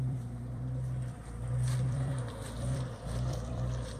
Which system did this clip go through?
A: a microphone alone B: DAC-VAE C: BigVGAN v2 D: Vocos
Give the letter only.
C